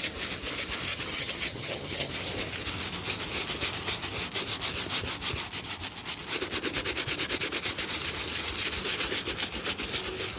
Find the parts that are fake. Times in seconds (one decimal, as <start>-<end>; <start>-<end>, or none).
0.9-2.1